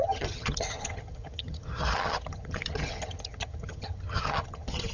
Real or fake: fake